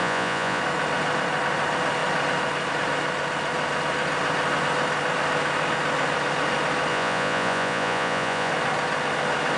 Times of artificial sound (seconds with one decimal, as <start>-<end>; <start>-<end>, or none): 0.0-0.6; 6.9-8.5